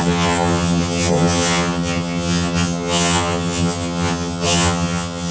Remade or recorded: remade